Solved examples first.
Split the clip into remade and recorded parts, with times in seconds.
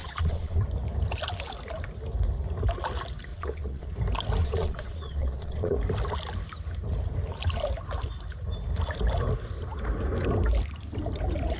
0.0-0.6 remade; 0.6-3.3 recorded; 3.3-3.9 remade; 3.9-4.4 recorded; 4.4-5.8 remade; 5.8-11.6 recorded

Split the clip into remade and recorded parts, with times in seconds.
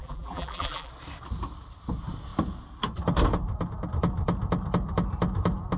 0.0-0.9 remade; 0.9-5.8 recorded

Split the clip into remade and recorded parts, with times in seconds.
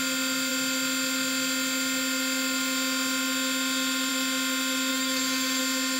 0.0-4.9 recorded; 4.9-5.6 remade; 5.6-6.0 recorded